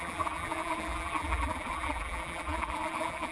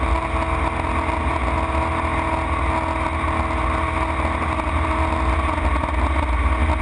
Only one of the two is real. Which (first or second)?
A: second